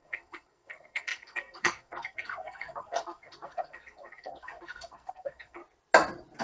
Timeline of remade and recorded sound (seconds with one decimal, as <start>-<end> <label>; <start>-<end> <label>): 0.0-5.6 remade; 5.6-6.4 recorded